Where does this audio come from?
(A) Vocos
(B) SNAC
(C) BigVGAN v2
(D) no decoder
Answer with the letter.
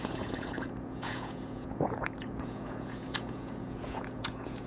A